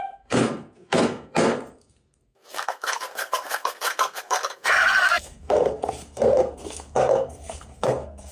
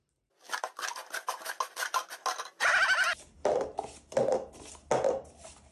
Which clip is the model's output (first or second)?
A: first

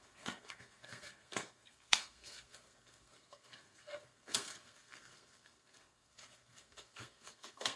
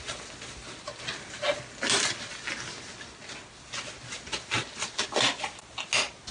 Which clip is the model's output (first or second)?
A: first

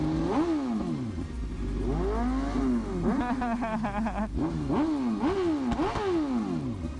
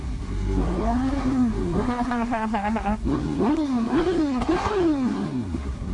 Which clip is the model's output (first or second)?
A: second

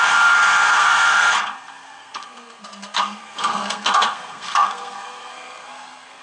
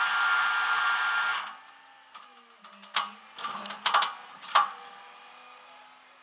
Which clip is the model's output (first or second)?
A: first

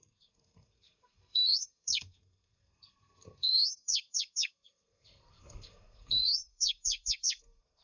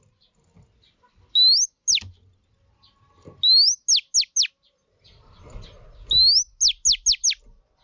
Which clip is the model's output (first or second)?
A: first